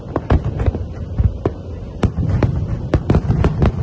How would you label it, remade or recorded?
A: recorded